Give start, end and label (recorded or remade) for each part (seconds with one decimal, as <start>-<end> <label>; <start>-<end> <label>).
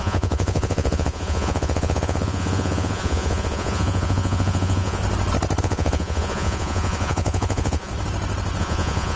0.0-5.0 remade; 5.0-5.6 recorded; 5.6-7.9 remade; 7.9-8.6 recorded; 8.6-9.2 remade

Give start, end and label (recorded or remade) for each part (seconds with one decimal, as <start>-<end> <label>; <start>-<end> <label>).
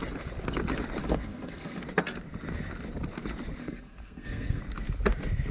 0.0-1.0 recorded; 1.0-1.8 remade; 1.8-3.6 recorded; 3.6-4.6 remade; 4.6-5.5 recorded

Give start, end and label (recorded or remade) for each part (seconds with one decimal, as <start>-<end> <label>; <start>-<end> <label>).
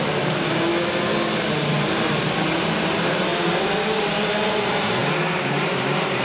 0.0-0.7 remade; 0.7-1.5 recorded; 1.5-3.3 remade; 3.3-4.0 recorded; 4.0-6.2 remade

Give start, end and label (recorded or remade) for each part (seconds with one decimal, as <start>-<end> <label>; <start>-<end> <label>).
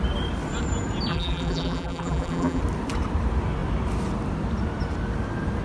0.0-1.1 recorded; 1.1-2.6 remade; 2.6-5.6 recorded